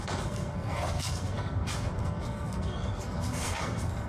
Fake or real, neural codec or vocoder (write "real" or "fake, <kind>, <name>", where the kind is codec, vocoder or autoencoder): fake, codec, SNAC